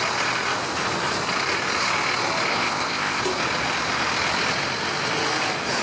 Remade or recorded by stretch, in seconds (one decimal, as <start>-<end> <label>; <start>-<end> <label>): 0.0-2.5 recorded; 2.5-3.2 remade; 3.2-5.8 recorded